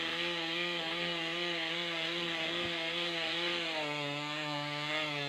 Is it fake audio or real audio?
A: fake